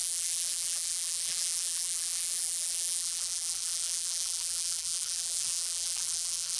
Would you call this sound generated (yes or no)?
yes